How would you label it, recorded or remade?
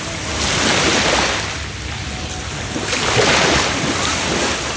recorded